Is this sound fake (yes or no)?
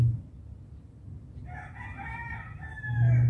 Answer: no